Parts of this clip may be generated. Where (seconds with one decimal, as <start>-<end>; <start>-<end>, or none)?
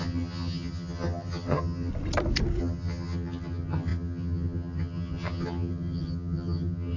0.0-1.9; 2.6-7.0